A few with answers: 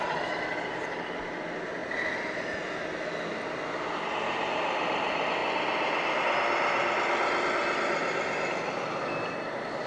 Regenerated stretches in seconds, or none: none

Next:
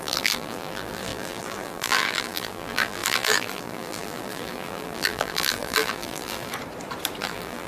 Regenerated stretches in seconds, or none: 0.0-6.5 (vocoder, BigVGAN v2); 7.2-7.7

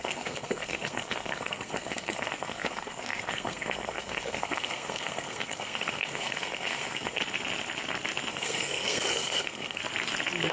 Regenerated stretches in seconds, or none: 0.0-7.2 (codec, SNAC); 8.3-9.8

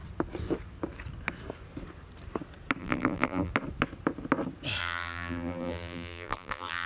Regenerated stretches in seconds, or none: 2.8-3.5 (vocoder, BigVGAN v2); 4.8-6.9